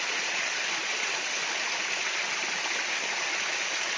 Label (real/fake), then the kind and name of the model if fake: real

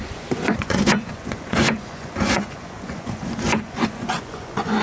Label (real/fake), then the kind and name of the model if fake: fake, vocoder, Vocos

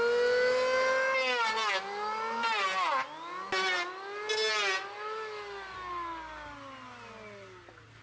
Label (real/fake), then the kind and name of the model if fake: real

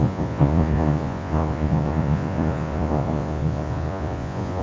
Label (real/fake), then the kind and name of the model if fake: fake, vocoder, Vocos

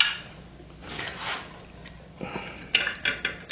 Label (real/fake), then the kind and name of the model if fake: real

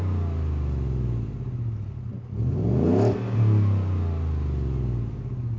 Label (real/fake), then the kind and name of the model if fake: real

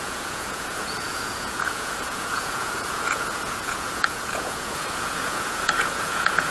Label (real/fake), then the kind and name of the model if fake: fake, vocoder, Vocos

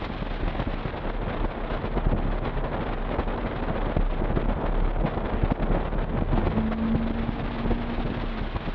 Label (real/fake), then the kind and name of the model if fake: real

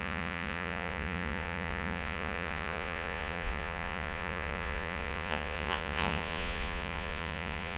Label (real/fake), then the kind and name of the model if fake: fake, vocoder, Vocos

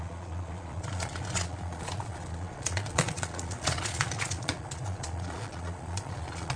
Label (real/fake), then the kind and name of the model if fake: fake, vocoder, Vocos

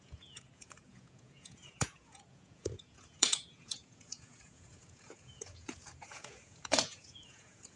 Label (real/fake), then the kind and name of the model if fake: fake, vocoder, Vocos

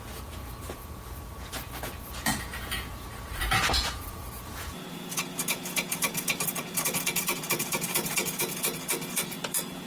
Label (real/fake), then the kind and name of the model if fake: fake, vocoder, Vocos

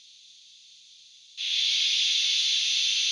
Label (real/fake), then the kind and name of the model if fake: real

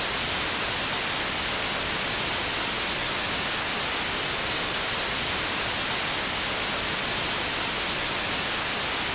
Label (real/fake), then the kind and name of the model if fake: real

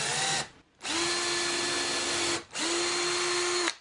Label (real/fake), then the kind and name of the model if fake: real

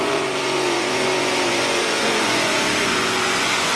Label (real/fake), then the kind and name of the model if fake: fake, vocoder, Vocos